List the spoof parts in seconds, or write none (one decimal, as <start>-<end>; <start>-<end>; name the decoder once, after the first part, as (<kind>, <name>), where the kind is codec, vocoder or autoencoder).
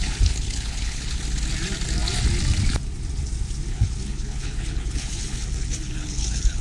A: 0.0-1.2 (codec, HILCodec); 3.7-6.6